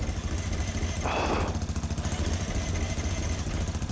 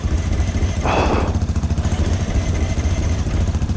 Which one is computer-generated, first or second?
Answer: second